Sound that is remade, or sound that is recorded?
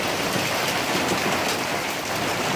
recorded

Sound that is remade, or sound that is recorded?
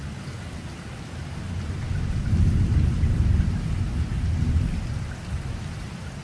recorded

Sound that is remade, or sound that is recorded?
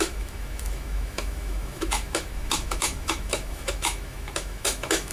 remade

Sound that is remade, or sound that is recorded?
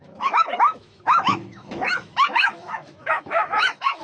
remade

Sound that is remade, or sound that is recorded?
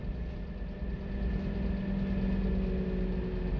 recorded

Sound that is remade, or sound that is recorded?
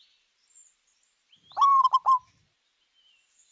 recorded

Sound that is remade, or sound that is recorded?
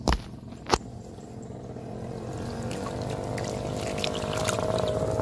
recorded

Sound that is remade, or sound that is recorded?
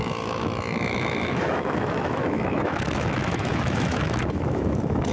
remade